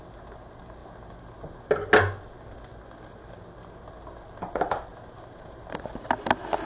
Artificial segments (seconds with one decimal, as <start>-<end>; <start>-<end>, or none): 4.9-5.6